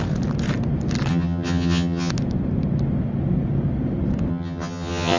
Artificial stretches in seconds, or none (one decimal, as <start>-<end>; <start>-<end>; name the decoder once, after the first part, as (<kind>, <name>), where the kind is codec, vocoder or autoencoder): 1.1-2.1 (vocoder, HiFi-GAN); 4.3-5.2